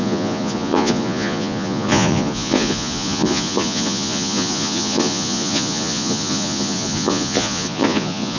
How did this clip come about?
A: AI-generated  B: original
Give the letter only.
A